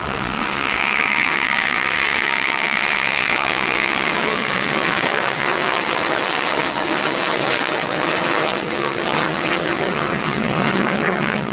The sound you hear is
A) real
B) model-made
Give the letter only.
B